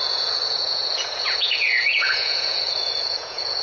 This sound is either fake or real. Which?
fake